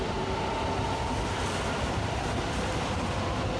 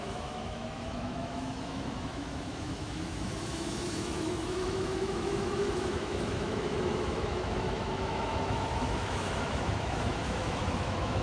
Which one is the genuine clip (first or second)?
first